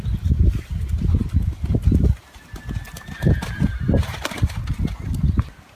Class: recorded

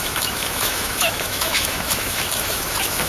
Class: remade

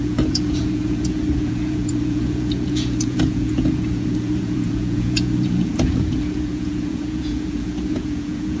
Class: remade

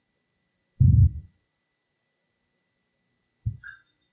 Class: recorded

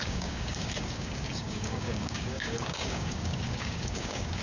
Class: remade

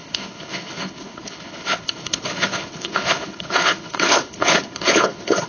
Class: remade